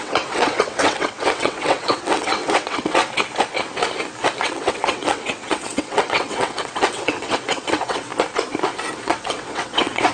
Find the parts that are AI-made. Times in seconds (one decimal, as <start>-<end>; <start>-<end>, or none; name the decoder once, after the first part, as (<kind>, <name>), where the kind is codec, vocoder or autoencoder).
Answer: 0.0-3.0 (vocoder, WaveNeXt); 4.4-8.1; 9.0-10.1